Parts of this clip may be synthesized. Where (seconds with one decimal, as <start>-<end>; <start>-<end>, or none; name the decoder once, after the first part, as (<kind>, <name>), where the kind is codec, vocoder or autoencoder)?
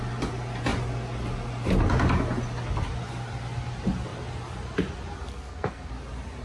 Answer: 5.3-5.9 (codec, SNAC)